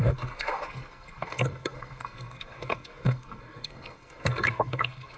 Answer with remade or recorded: remade